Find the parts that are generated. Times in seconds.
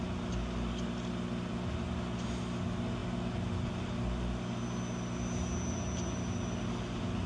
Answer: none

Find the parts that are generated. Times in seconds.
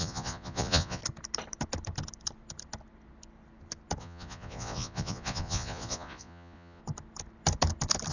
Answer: 0.0-1.0 (vocoder, Vocos); 4.0-6.8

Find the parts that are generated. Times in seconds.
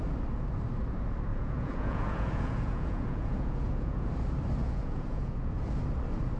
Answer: 1.3-4.1 (vocoder, Vocos); 4.6-5.5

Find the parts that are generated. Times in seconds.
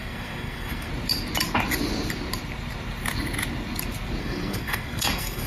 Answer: 0.0-0.9 (codec, SNAC); 4.2-5.5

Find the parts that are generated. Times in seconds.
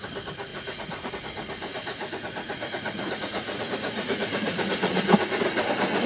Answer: 0.5-1.1 (vocoder, Vocos); 1.7-5.4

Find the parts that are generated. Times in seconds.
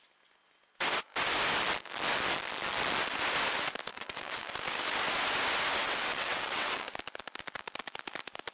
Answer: 3.9-4.5 (vocoder, WaveNeXt); 5.8-6.9